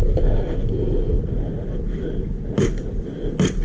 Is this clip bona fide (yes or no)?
yes